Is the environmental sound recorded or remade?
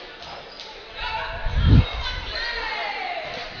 recorded